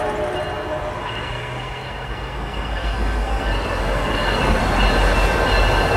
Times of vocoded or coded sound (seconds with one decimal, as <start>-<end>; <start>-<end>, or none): 1.0-4.6